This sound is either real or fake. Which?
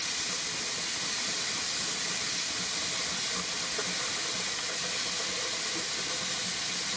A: real